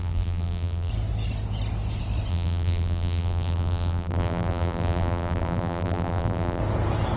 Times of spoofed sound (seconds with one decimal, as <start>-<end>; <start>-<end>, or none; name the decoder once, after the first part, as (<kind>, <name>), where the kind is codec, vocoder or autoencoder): 0.0-0.9 (vocoder, BigVGAN v2); 2.3-6.6